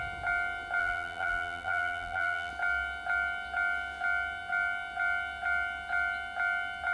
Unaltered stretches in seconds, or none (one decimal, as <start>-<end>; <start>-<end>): 0.0-0.8; 2.5-6.9